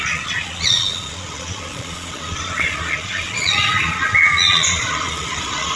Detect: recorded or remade remade